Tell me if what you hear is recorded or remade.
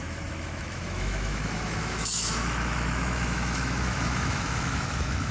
remade